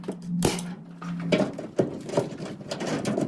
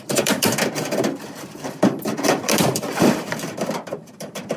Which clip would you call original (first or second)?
first